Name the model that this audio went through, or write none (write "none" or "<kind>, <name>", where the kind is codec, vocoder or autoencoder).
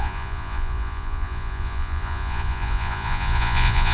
vocoder, Vocos